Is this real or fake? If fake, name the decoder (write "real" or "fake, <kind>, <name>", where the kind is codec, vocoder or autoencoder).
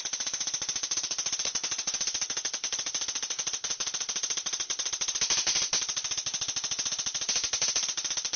real